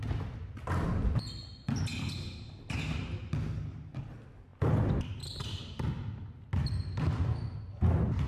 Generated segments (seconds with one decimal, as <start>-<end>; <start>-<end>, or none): none